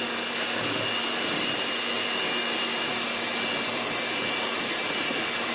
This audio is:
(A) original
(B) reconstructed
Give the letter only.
A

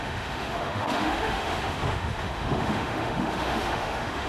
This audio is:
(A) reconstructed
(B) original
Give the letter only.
A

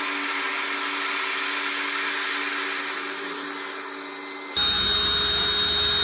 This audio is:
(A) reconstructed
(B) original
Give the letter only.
B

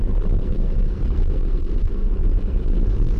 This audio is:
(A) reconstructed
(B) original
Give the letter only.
A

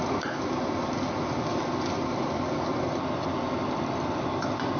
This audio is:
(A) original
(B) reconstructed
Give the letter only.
A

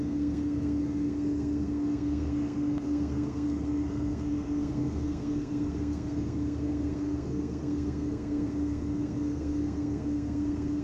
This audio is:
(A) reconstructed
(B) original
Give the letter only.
A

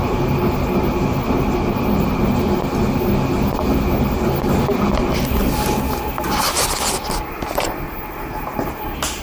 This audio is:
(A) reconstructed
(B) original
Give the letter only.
B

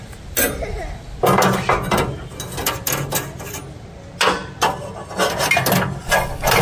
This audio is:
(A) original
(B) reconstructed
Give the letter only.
A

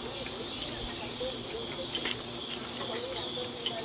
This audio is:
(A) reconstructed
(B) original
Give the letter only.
B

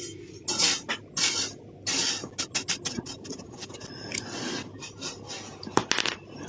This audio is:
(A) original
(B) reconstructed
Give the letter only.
A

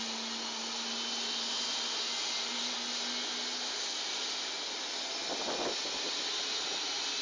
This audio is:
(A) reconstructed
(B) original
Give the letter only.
B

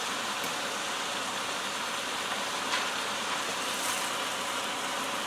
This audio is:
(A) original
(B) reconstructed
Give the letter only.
A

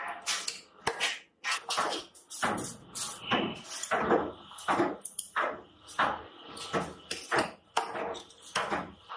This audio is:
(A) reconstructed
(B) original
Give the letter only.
B